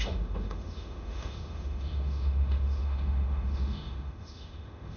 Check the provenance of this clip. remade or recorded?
remade